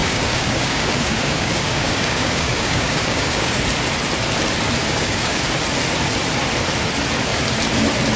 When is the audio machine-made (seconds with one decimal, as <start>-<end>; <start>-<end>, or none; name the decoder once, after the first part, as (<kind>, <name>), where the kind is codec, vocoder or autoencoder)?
0.0-3.6 (codec, DAC); 4.8-5.4